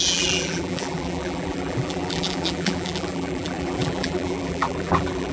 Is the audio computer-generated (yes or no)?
yes